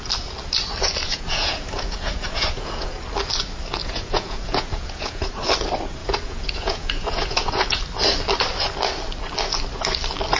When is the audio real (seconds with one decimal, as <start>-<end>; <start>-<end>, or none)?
0.0-1.0; 3.0-3.8; 5.3-6.0; 7.8-10.4